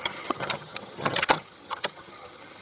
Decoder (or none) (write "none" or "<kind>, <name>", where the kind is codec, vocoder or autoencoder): vocoder, HiFi-GAN